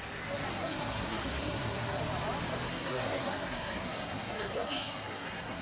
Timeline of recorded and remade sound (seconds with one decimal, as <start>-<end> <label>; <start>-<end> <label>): 0.0-0.5 recorded; 0.5-2.0 remade; 2.0-2.7 recorded; 2.7-5.6 remade